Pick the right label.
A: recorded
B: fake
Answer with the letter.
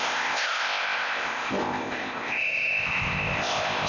B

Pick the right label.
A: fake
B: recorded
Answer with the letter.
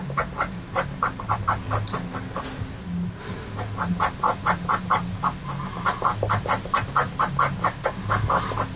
B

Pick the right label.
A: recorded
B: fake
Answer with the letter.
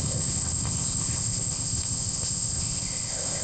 B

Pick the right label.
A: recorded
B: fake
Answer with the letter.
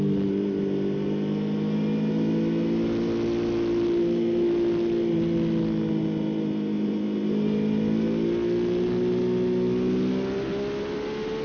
A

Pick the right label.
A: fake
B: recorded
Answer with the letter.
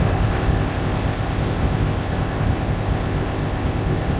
A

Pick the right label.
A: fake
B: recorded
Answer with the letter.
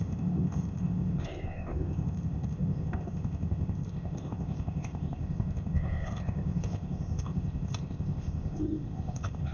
A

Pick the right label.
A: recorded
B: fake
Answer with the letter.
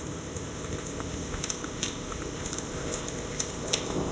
B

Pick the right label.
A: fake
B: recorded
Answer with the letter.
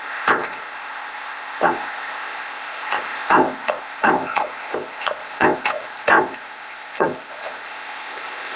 A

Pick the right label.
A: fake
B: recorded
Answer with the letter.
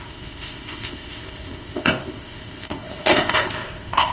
A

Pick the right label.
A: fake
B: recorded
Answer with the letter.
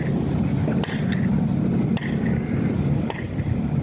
B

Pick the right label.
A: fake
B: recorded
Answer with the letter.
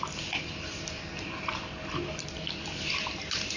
B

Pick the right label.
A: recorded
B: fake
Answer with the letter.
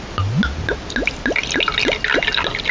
A